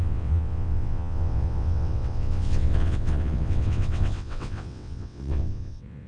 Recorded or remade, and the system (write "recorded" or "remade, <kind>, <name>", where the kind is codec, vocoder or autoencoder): remade, vocoder, WaveNeXt